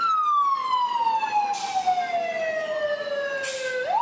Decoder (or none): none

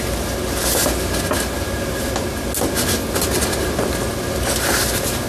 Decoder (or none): none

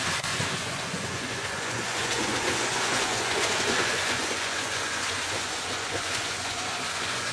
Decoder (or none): vocoder, Vocos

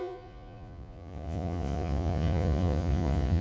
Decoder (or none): vocoder, Vocos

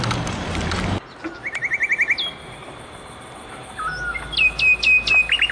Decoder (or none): none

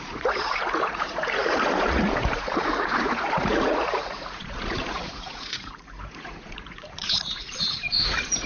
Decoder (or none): vocoder, Vocos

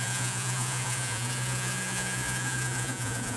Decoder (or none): vocoder, Vocos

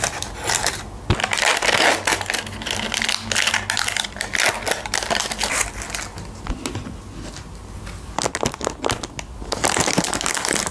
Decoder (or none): none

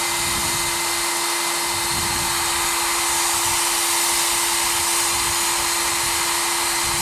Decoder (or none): none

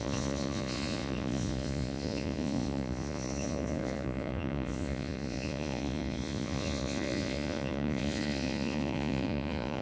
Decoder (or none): vocoder, Vocos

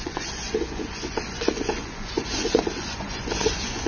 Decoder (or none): vocoder, Vocos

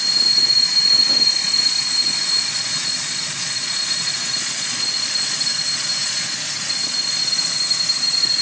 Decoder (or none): vocoder, Vocos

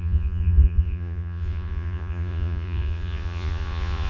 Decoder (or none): vocoder, Vocos